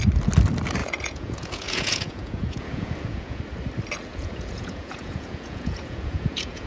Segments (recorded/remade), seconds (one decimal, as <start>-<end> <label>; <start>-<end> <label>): 0.0-0.8 recorded; 0.8-3.4 remade; 3.4-4.1 recorded; 4.1-6.7 remade